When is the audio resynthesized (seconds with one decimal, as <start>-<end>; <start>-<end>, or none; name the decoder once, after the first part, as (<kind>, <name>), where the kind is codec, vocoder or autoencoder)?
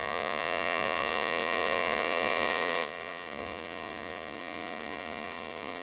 0.0-5.8 (vocoder, Vocos)